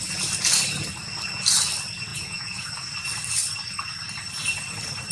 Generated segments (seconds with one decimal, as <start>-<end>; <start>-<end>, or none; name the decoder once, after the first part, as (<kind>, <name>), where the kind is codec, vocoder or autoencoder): 2.1-2.7 (vocoder, Vocos)